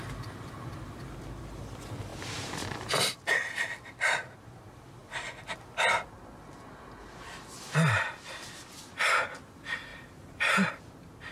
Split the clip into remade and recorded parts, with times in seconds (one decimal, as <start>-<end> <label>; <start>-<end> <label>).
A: 0.0-9.9 recorded; 9.9-10.7 remade; 10.7-11.3 recorded